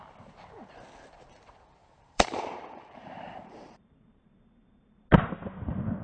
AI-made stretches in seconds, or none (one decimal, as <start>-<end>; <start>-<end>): 1.8-4.3